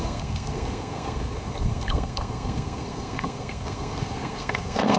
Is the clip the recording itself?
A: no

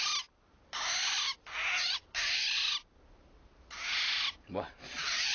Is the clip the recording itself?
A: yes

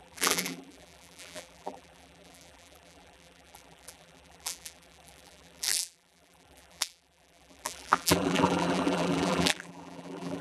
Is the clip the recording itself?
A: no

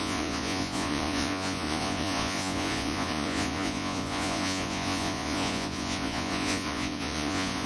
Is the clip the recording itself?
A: no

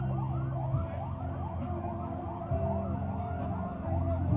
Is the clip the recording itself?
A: yes